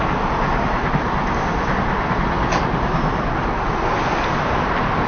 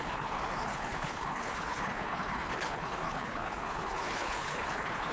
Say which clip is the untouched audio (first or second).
first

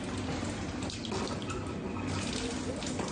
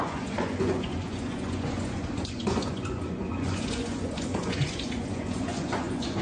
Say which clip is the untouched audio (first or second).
first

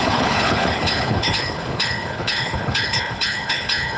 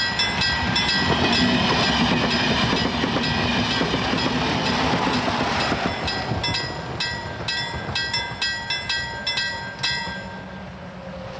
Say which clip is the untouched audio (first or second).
second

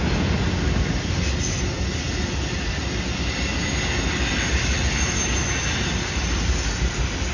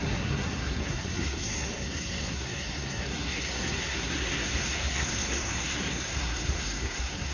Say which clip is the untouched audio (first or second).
first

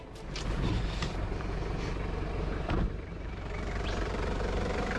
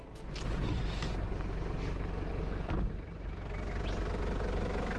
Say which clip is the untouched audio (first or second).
second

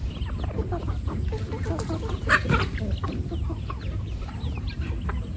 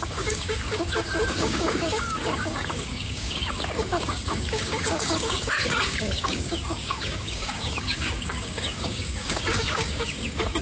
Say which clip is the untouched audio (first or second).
first